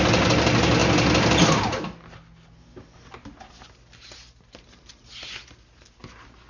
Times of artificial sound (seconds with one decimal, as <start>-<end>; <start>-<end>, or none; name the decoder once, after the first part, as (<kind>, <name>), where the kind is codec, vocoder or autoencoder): none